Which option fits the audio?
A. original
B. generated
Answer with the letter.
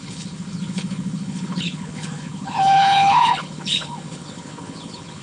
B